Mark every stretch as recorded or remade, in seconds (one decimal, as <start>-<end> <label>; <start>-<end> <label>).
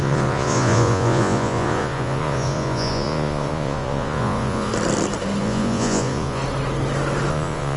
0.0-4.7 remade; 4.7-5.4 recorded; 5.4-6.4 remade; 6.4-7.3 recorded; 7.3-7.8 remade